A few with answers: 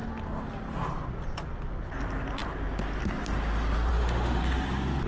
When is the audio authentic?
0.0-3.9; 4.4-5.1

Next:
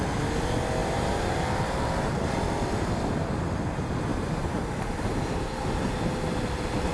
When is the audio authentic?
0.0-0.8; 2.9-4.1; 5.8-6.9

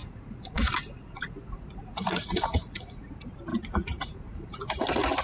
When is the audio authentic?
3.1-3.5; 4.6-5.2

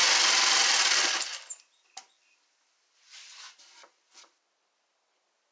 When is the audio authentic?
0.0-5.5